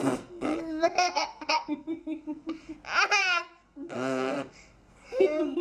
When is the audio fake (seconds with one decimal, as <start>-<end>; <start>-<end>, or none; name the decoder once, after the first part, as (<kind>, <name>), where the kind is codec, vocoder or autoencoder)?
0.0-2.7 (codec, SNAC); 3.2-5.6